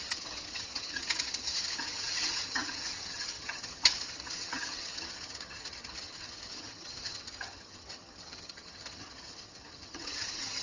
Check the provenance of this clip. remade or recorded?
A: remade